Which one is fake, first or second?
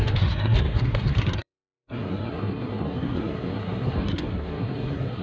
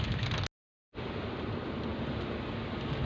first